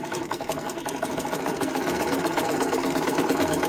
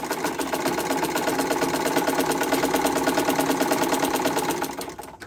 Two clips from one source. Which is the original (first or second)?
second